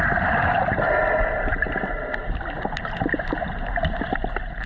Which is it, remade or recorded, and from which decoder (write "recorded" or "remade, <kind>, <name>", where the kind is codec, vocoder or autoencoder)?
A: recorded